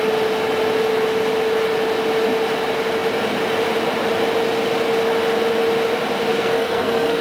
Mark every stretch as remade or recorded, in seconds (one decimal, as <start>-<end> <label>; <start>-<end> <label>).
0.0-6.3 recorded; 6.3-7.2 remade